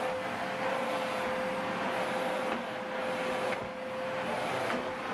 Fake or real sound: real